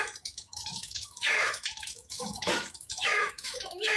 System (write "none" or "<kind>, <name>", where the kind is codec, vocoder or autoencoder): autoencoder, DAC-VAE